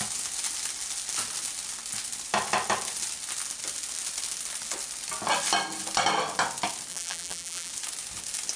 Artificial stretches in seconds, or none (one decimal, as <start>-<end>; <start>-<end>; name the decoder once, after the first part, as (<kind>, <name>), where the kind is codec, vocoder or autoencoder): 6.9-7.7 (vocoder, BigVGAN v2)